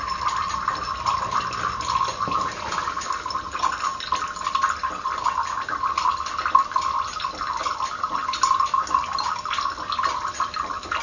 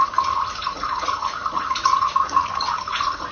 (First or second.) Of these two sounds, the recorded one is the first